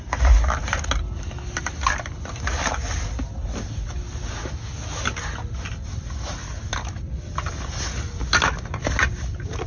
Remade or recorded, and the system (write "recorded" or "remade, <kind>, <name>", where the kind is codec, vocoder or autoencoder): recorded